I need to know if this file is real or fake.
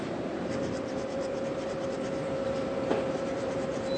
fake